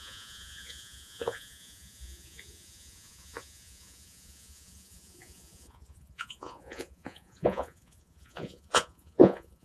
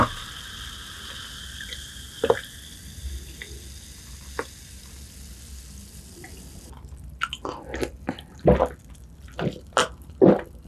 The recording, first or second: second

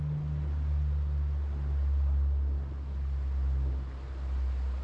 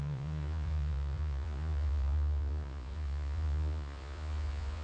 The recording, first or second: first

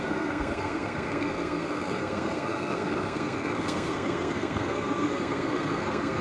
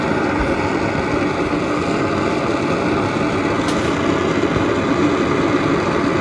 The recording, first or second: second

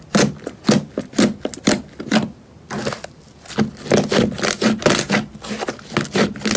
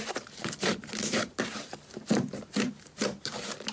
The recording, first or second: first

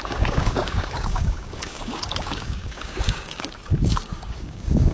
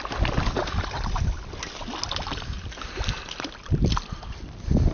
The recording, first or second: second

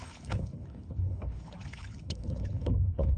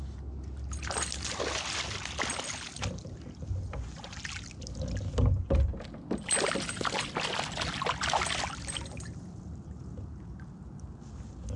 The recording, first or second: second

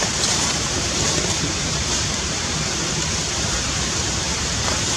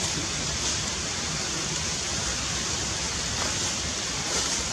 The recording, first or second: second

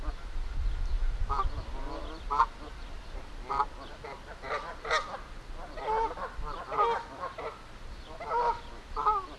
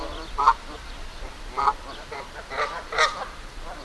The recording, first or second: first